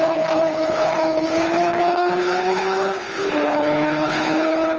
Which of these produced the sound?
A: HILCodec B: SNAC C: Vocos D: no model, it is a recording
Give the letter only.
A